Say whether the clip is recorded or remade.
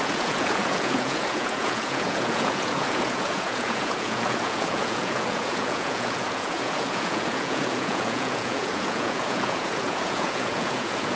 remade